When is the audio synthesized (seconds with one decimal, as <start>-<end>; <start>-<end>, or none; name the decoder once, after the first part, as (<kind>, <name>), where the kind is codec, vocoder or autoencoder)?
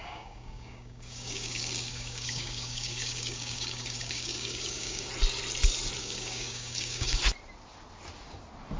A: 0.0-5.1 (codec, DAC); 6.0-7.2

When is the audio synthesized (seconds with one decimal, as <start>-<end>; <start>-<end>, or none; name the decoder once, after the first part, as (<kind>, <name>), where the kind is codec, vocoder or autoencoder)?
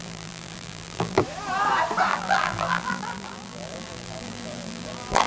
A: 0.0-1.2 (vocoder, BigVGAN v2); 2.1-5.3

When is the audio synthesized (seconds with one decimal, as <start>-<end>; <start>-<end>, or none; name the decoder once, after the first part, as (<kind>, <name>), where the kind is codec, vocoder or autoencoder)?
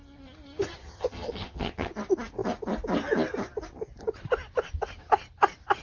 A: 0.8-1.9 (vocoder, HiFi-GAN)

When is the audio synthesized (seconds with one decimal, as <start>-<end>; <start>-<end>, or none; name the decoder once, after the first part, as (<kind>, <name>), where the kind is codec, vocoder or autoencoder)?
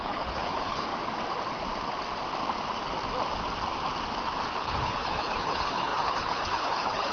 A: 0.0-0.9 (codec, HILCodec); 4.6-7.1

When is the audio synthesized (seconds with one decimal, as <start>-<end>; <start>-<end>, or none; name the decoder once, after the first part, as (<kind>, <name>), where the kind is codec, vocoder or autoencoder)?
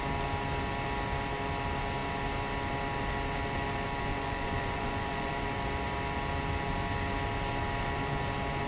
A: 4.1-5.3 (vocoder, Vocos)